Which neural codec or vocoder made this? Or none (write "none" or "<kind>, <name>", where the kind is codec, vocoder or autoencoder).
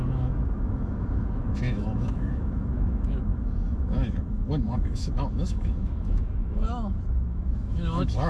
autoencoder, DAC-VAE